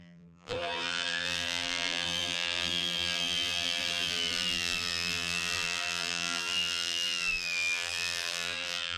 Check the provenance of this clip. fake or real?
fake